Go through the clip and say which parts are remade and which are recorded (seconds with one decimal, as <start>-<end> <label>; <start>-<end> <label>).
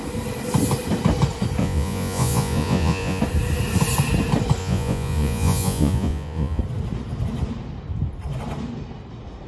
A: 0.0-1.6 recorded; 1.6-3.2 remade; 3.2-4.6 recorded; 4.6-6.6 remade; 6.6-9.5 recorded